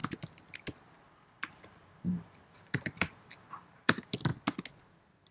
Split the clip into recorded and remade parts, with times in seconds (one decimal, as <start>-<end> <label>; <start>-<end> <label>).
0.0-1.1 recorded; 1.1-4.3 remade; 4.3-5.3 recorded